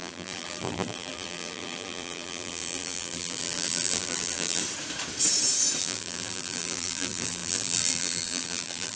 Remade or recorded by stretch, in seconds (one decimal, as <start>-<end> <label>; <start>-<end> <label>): 0.0-4.6 remade; 4.6-5.8 recorded; 5.8-9.0 remade